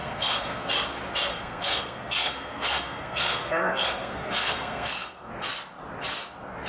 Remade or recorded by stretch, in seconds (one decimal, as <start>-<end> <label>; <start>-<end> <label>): 0.0-0.7 remade; 0.7-1.3 recorded; 1.3-5.3 remade; 5.3-6.7 recorded